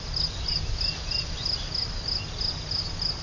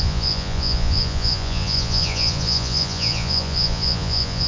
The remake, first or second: second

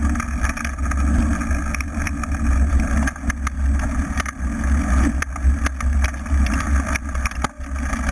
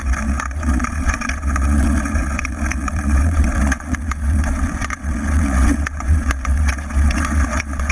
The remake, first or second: second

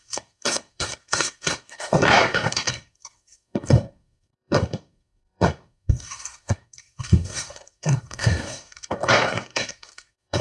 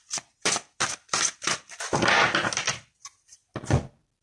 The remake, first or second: first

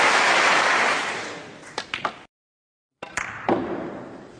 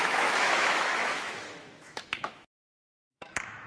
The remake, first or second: second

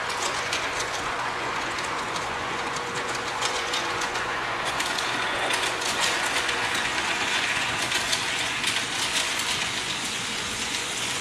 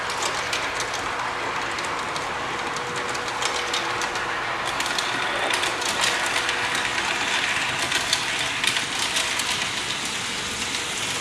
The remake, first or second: first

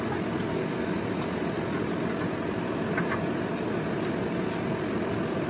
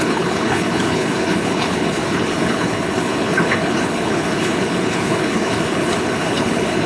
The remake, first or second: second